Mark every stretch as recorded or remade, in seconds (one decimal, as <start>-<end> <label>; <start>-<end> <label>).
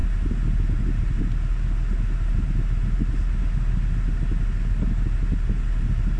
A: 0.0-6.2 recorded